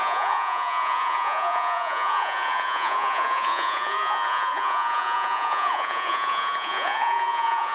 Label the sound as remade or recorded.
remade